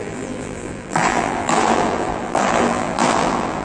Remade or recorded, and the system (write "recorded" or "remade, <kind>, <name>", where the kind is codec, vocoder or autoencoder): remade, vocoder, BigVGAN v2